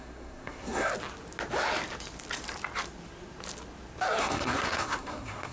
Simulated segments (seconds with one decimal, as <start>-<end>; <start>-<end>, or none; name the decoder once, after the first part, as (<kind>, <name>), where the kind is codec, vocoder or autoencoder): 0.0-0.9 (codec, SNAC); 4.2-5.5